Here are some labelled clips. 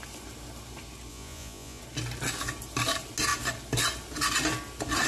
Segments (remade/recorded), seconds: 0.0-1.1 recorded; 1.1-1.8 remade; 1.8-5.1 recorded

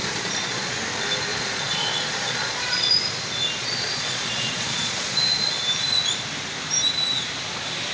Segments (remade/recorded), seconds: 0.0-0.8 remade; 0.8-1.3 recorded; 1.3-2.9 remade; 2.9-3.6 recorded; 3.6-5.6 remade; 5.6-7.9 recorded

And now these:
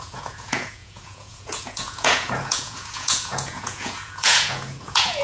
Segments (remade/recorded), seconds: 0.0-5.2 remade

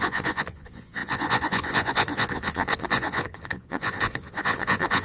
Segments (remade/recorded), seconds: 0.0-5.0 remade

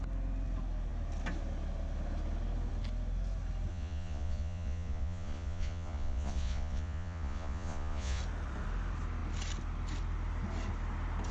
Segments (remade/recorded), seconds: 0.0-3.7 recorded; 3.7-8.2 remade; 8.2-11.3 recorded

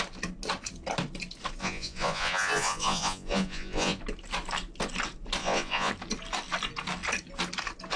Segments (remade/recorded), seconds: 0.0-1.6 recorded; 1.6-4.0 remade; 4.0-5.4 recorded; 5.4-5.9 remade; 5.9-8.0 recorded

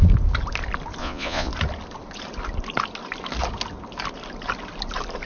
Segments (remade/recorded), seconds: 0.0-1.0 recorded; 1.0-1.5 remade; 1.5-5.3 recorded

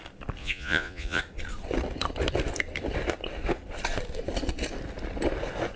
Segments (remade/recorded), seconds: 0.0-0.4 recorded; 0.4-1.2 remade; 1.2-5.8 recorded